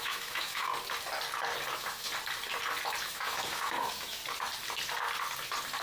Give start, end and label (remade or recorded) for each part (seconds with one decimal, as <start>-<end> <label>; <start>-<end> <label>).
0.0-0.7 remade; 0.7-1.7 recorded; 1.7-2.1 remade; 2.1-3.0 recorded; 3.0-4.2 remade; 4.2-5.8 recorded